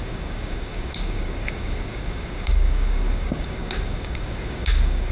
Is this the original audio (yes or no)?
no